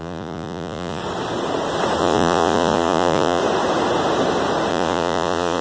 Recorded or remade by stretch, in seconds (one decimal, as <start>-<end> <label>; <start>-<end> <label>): 0.0-1.0 remade; 1.0-2.0 recorded; 2.0-3.4 remade; 3.4-4.7 recorded; 4.7-5.6 remade